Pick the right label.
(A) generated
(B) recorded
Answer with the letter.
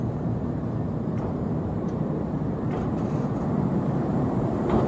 A